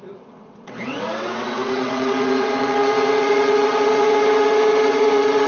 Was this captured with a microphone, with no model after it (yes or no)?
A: no